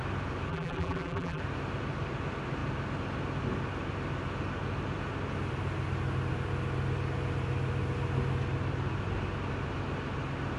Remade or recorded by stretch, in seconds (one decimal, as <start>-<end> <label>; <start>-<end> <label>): 0.0-0.5 recorded; 0.5-1.4 remade; 1.4-10.6 recorded